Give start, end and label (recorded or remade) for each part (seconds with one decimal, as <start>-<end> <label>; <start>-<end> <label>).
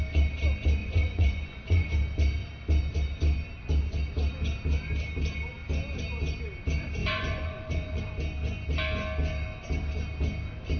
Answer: 0.0-0.8 recorded; 0.8-1.9 remade; 1.9-7.0 recorded; 7.0-8.0 remade; 8.0-10.8 recorded